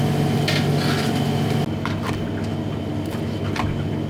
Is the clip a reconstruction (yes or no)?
no